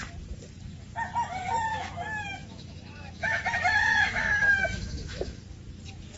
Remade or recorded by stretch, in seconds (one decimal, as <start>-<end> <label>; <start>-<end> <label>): 0.0-1.7 recorded; 1.7-5.4 remade; 5.4-6.2 recorded